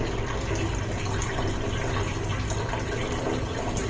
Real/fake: real